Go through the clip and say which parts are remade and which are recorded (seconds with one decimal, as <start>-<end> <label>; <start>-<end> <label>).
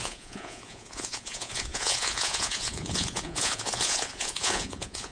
0.0-5.1 remade